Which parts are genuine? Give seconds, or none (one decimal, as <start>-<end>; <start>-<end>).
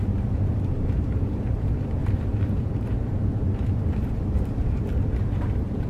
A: none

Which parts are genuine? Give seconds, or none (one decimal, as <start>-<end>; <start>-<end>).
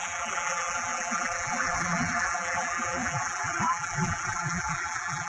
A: none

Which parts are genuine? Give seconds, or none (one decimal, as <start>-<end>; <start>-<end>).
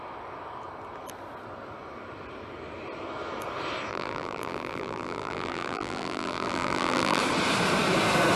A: 0.0-3.9; 7.2-8.4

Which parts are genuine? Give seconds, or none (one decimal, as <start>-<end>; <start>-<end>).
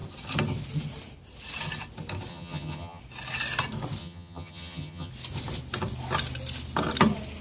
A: 0.0-2.3; 3.0-4.0; 5.1-7.4